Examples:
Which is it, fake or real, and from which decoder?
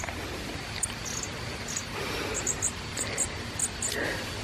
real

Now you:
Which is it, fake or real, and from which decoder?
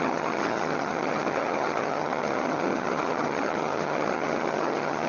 fake, vocoder, HiFi-GAN